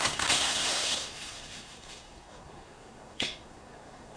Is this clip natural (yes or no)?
no